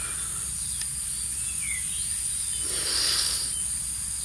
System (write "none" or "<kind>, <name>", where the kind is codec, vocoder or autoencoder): none